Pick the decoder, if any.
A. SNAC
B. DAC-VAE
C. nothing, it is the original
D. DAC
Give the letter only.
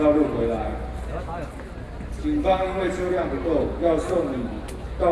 C